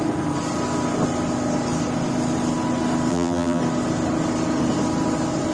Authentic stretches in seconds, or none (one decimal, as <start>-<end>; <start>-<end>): 0.0-3.1; 3.6-5.5